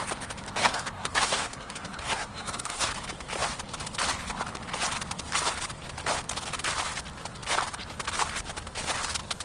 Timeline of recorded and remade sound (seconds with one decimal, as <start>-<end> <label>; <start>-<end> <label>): 0.0-0.6 recorded; 0.6-2.9 remade; 2.9-9.4 recorded